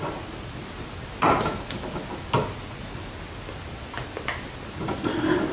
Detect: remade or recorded recorded